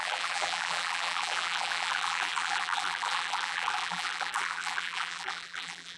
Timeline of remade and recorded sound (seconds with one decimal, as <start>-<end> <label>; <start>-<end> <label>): 0.0-6.0 remade